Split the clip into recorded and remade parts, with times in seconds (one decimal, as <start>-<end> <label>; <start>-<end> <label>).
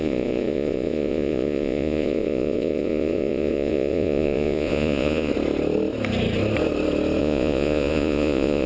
0.0-5.3 remade; 5.3-7.2 recorded; 7.2-8.7 remade